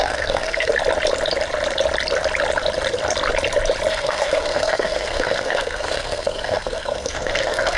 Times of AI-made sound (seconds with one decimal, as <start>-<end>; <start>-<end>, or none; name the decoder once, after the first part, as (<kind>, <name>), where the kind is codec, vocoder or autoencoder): 0.0-0.7 (codec, SNAC); 3.9-7.8